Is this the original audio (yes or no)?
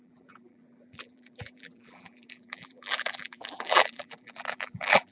no